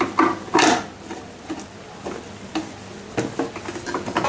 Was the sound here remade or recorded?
recorded